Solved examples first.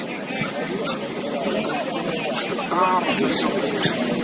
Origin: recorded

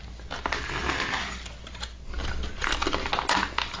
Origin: recorded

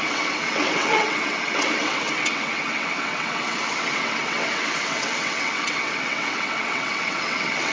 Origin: remade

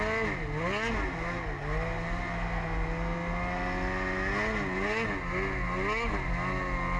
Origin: recorded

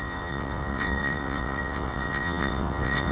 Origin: remade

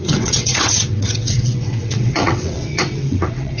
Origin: remade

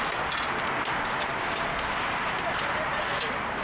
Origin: recorded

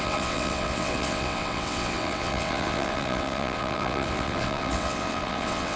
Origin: remade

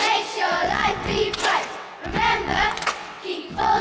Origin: remade